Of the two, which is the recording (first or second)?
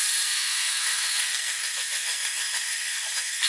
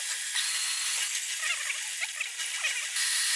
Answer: second